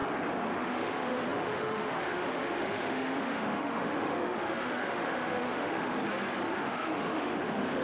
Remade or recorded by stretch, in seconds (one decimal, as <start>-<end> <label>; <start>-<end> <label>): 0.0-0.5 recorded; 0.5-5.9 remade; 5.9-6.5 recorded; 6.5-7.8 remade